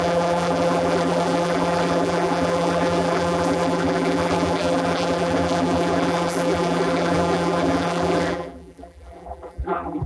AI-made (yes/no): yes